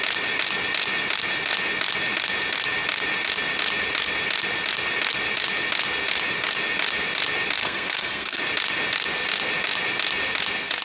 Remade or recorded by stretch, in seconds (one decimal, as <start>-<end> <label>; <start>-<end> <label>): 0.0-7.6 recorded; 7.6-8.4 remade; 8.4-10.8 recorded